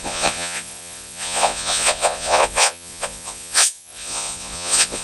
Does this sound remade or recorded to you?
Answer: remade